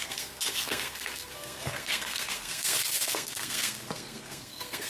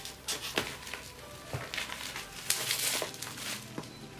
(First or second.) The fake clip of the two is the first